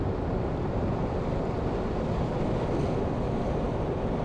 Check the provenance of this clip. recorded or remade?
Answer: recorded